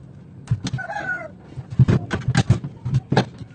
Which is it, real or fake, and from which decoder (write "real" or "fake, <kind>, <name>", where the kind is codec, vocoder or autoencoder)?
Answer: real